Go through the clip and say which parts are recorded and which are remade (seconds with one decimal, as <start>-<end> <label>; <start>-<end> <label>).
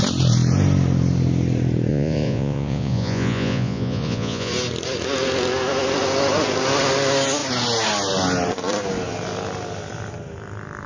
0.0-1.9 recorded; 1.9-4.5 remade; 4.5-10.9 recorded